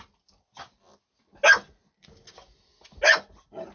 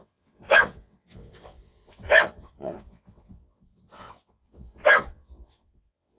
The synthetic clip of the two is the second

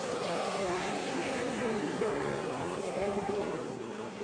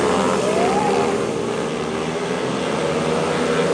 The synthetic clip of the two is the first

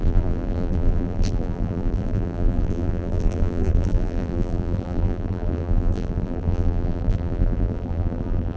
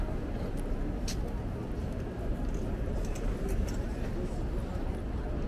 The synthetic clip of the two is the first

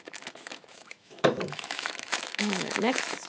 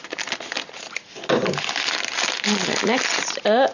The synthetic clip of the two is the first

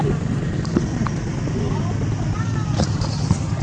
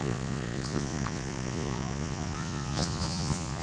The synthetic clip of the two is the second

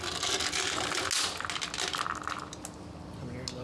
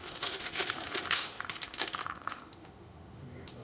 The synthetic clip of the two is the second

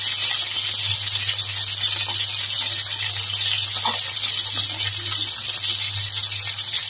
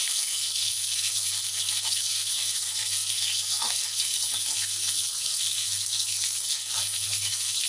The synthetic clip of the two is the second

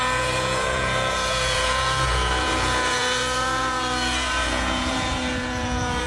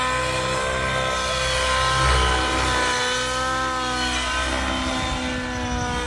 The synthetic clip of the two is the first